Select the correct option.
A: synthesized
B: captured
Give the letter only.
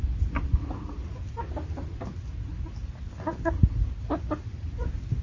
B